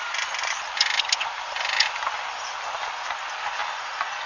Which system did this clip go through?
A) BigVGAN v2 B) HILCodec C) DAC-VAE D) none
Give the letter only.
A